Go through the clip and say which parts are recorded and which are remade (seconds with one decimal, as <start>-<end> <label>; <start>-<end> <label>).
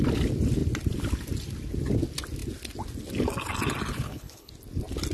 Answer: 0.0-3.9 recorded; 3.9-4.5 remade; 4.5-5.1 recorded